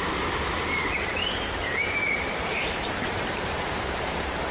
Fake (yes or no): yes